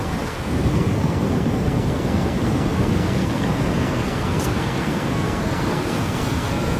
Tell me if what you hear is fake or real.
fake